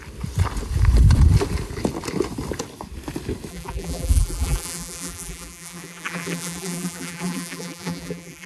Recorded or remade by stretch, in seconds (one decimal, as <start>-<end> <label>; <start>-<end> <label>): 0.0-3.5 recorded; 3.5-8.5 remade